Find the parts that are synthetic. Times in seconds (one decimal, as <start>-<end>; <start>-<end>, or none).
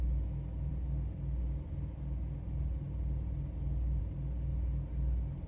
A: none